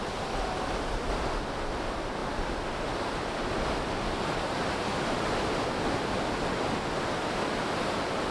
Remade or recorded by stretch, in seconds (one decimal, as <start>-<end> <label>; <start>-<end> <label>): 0.0-8.3 recorded